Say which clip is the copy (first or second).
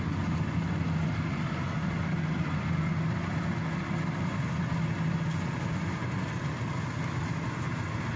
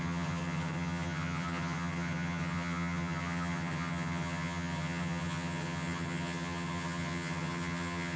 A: second